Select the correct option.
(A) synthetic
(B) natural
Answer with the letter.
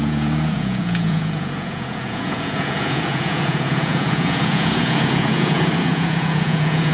A